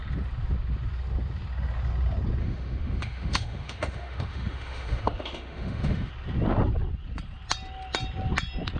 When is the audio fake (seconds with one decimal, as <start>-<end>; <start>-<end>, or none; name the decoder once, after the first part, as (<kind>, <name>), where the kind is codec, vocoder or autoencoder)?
2.4-6.1 (autoencoder, DAC-VAE)